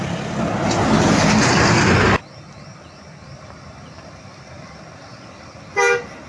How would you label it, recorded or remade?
recorded